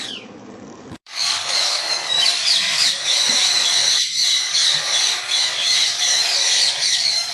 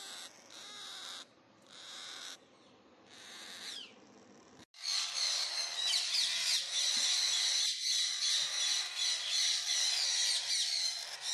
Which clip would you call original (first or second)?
second